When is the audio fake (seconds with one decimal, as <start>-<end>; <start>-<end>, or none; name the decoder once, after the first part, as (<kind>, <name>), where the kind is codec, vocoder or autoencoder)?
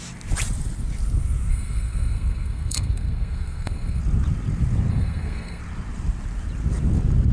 1.5-4.0 (codec, SNAC); 4.9-5.6